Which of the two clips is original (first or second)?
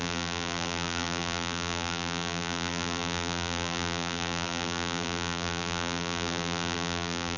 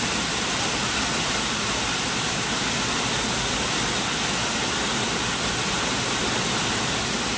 second